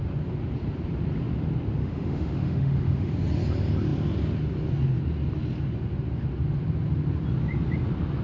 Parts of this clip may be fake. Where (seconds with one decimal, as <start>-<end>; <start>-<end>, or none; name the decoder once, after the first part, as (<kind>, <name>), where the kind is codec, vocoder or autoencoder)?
1.8-3.1 (autoencoder, DAC-VAE)

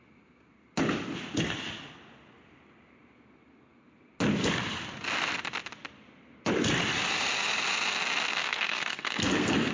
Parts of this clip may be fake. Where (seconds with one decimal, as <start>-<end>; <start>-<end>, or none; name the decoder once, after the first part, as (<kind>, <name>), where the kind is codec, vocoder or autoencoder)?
8.3-9.7 (codec, SNAC)

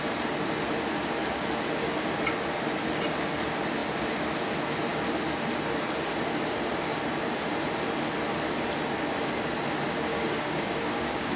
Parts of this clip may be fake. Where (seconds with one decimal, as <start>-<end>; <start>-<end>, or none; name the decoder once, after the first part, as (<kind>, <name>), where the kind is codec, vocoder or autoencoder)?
10.1-11.4 (codec, DAC)

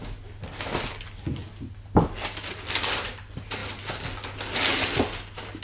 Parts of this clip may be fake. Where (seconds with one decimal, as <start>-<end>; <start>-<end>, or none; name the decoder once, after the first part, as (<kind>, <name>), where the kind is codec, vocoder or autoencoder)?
none

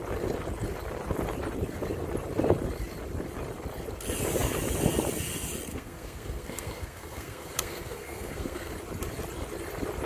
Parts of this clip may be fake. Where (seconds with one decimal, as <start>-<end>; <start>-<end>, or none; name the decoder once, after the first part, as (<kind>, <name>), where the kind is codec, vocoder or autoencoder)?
5.7-8.7 (codec, SNAC)